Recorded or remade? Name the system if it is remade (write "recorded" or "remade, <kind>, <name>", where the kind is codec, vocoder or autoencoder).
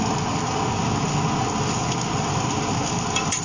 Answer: recorded